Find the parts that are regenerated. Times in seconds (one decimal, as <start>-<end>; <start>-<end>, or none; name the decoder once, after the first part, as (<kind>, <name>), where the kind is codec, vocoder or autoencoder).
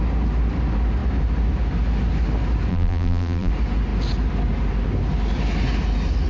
2.7-3.5 (vocoder, BigVGAN v2)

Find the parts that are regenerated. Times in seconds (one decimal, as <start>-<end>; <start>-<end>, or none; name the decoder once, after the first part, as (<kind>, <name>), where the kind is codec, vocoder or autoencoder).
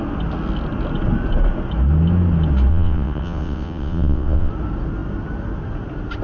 2.7-4.5 (vocoder, WaveNeXt)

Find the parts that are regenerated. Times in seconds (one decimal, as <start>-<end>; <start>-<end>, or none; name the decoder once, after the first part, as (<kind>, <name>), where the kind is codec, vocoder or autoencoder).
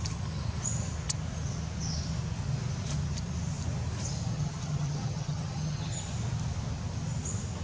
4.3-6.0 (vocoder, HiFi-GAN)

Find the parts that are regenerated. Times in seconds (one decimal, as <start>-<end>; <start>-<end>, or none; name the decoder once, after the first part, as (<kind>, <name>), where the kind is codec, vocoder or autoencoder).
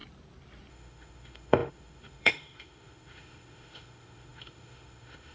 0.7-5.3 (autoencoder, DAC-VAE)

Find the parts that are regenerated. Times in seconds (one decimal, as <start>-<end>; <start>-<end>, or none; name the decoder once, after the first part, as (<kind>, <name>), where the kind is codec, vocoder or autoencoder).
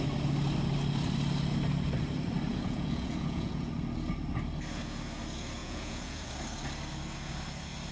2.5-3.7 (vocoder, Vocos); 5.6-6.3